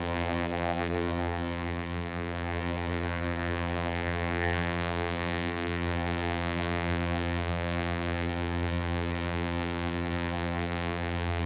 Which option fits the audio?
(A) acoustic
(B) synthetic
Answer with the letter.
B